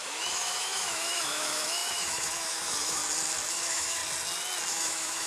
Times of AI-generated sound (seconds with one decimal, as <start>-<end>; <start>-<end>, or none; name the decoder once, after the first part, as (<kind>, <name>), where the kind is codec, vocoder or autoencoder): 0.0-3.0 (autoencoder, DAC-VAE); 3.5-4.0; 4.7-5.3